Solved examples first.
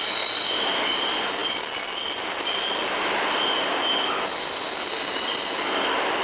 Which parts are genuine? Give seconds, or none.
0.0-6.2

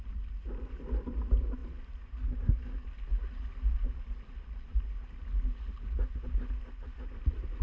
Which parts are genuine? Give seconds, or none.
0.0-7.6

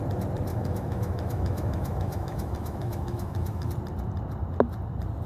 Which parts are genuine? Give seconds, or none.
0.0-0.5; 3.7-5.3

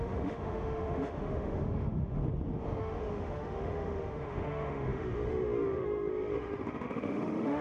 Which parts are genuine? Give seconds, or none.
2.2-2.8

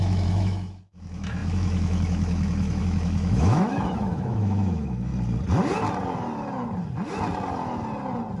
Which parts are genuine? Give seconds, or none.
5.1-8.4

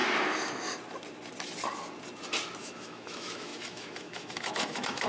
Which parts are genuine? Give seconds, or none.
0.0-2.6